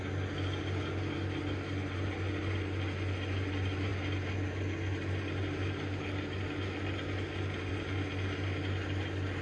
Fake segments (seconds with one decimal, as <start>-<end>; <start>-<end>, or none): none